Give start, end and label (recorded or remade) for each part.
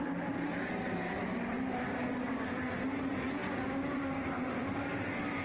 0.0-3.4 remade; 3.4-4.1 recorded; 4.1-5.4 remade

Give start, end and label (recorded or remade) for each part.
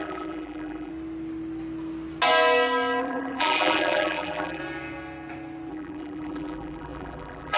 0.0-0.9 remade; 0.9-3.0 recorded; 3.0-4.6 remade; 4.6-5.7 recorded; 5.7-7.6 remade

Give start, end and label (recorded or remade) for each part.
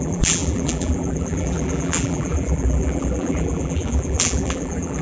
0.0-5.0 remade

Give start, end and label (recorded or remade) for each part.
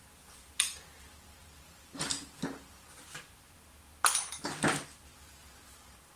0.0-1.4 recorded; 1.4-3.0 remade; 3.0-6.2 recorded